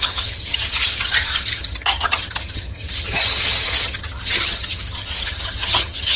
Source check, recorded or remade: remade